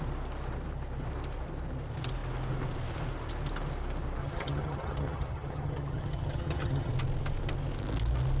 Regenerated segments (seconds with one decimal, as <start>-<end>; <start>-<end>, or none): 4.2-6.9